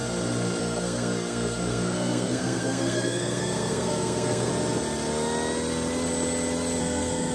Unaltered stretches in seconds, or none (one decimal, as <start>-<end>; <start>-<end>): 0.0-0.6; 4.5-6.8